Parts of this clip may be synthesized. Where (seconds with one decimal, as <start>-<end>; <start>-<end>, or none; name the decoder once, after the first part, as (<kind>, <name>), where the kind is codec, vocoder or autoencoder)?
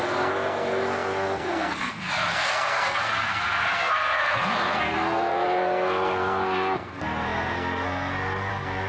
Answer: 0.0-8.9 (codec, SNAC)